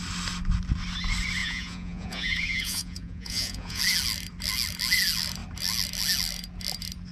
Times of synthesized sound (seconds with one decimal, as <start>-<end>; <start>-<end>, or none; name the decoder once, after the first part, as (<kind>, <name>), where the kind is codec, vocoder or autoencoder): 1.4-3.8 (vocoder, Vocos)